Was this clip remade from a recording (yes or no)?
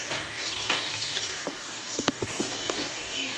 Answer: yes